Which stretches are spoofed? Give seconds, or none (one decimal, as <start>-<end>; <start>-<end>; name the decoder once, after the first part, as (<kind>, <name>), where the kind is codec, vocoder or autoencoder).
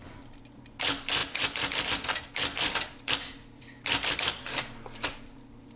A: none